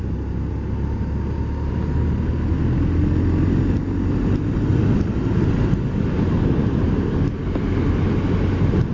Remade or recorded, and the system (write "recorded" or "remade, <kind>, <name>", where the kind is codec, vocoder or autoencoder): recorded